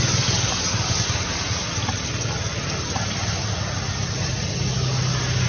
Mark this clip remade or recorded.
recorded